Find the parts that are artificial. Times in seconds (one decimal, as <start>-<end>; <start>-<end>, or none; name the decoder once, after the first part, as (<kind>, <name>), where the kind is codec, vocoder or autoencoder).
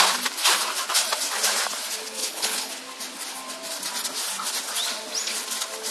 2.2-2.7 (codec, HILCodec)